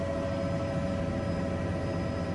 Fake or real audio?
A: real